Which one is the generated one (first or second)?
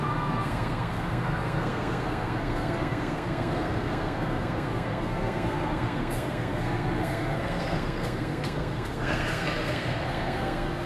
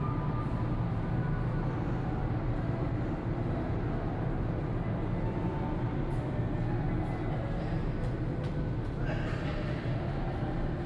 first